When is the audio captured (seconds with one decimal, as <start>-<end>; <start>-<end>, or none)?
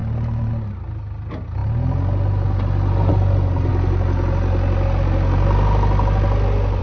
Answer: 0.5-6.8